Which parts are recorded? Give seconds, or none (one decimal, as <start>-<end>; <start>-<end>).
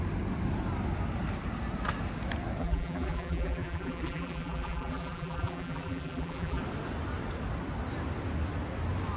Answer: 0.0-2.6; 6.6-9.2